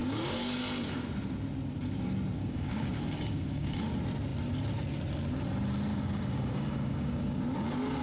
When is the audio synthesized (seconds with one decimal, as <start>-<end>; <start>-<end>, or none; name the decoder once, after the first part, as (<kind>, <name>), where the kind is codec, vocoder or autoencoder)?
0.0-0.6 (codec, DAC); 2.4-3.8; 5.9-7.4